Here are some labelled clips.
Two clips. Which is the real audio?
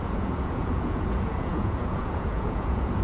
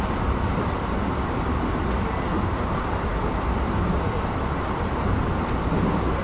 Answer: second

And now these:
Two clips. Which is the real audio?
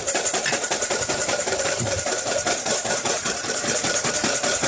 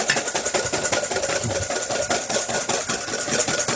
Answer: second